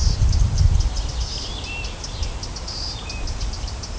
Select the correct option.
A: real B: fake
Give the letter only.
A